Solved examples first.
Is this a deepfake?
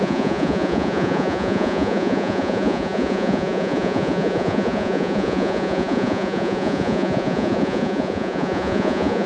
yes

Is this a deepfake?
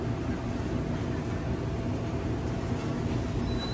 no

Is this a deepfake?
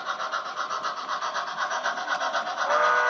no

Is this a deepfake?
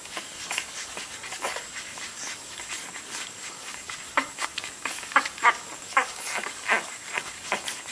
yes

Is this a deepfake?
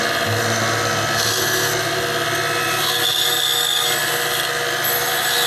no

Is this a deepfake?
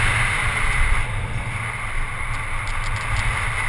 no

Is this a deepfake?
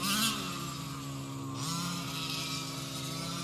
no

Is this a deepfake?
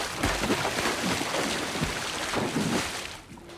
no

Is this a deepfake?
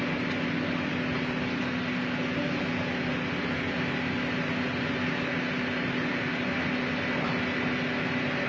no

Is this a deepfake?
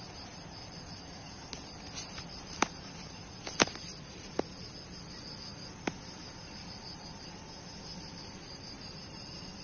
no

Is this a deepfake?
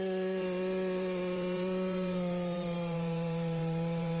yes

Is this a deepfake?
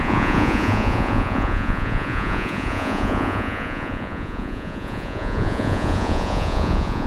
yes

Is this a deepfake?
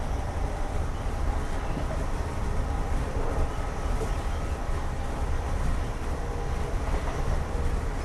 no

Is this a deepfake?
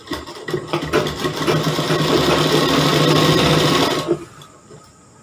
no